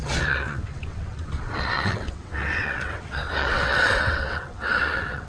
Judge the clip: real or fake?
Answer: fake